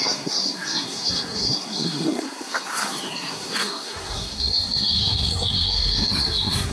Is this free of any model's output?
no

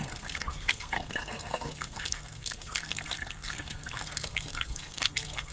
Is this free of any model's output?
no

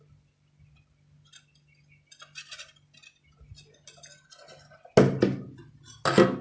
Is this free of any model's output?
yes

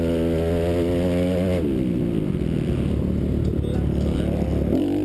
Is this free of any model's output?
yes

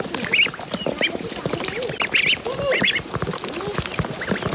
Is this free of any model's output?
yes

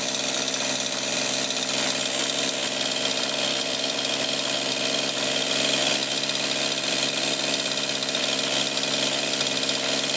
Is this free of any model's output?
yes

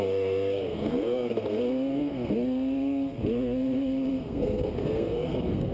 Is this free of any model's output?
no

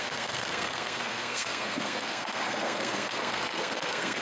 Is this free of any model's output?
no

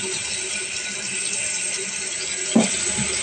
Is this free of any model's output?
yes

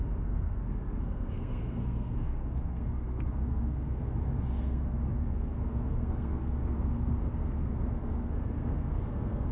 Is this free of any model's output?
no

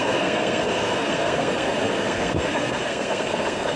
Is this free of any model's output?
no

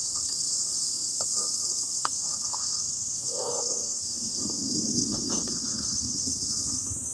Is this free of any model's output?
no